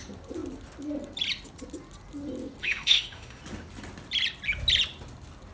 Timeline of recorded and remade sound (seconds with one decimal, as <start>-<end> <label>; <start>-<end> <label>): 0.0-2.6 recorded; 2.6-3.4 remade; 3.4-5.5 recorded